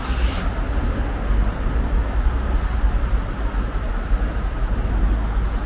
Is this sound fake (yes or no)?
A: no